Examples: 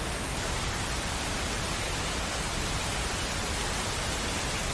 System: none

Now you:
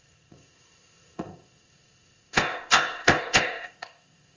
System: codec, ZipCodec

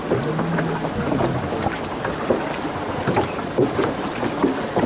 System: none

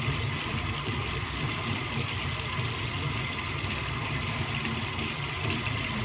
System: vocoder, BigVGAN v2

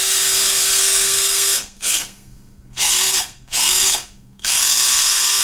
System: codec, SNAC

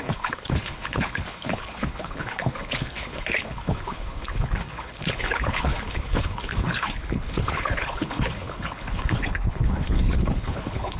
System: codec, HILCodec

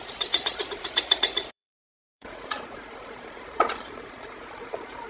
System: vocoder, Vocos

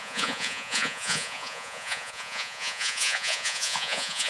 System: vocoder, Vocos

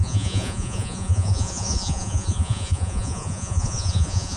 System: vocoder, Vocos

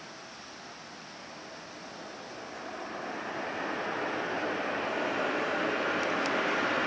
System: none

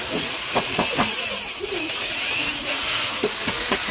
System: vocoder, Vocos